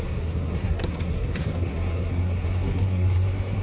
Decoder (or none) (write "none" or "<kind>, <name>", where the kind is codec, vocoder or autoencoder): codec, SNAC